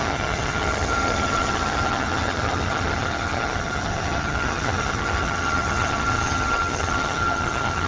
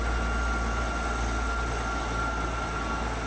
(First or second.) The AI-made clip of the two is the first